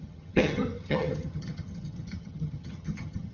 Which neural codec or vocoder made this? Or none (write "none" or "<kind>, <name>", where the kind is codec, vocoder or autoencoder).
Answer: vocoder, HiFi-GAN